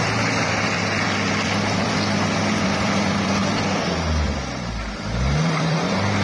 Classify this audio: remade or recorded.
remade